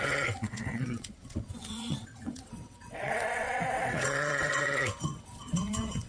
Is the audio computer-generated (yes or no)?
yes